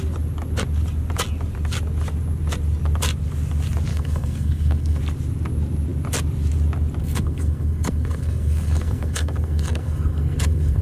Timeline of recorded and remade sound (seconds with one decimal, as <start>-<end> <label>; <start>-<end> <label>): 0.0-3.9 recorded; 3.9-5.0 remade; 5.0-7.0 recorded; 7.0-10.8 remade